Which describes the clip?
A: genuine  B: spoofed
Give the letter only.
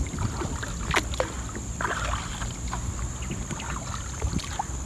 A